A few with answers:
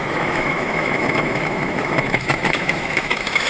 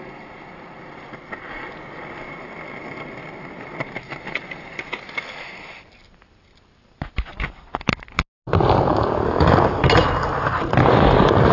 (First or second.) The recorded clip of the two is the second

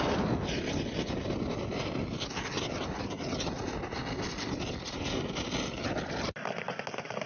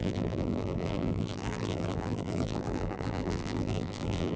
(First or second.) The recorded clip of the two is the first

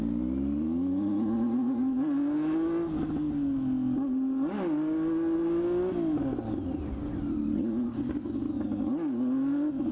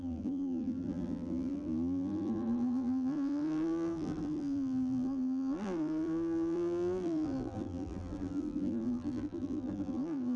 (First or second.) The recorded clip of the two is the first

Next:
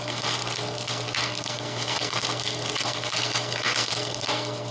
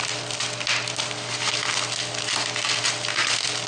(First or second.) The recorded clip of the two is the second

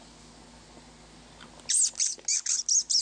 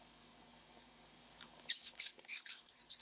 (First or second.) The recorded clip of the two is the first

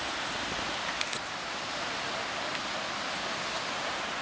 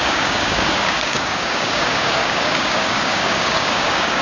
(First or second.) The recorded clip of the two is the first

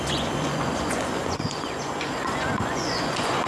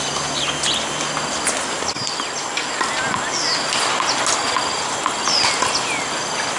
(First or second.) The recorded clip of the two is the second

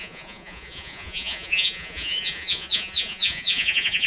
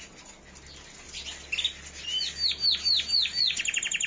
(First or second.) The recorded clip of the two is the second